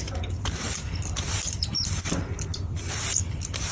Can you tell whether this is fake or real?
fake